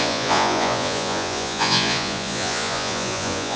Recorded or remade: remade